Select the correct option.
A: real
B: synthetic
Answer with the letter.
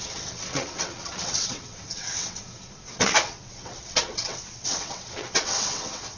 B